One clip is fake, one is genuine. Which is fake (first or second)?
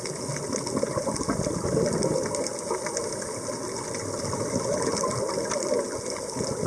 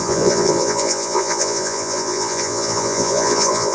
second